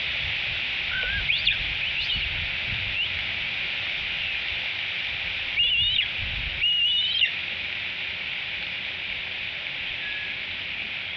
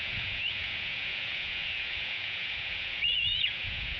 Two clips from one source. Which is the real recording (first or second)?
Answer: first